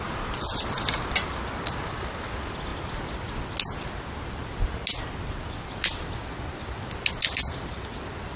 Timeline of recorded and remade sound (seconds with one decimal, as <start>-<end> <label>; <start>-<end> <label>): 0.0-8.4 recorded